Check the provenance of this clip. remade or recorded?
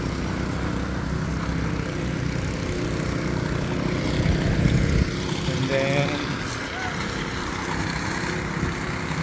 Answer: recorded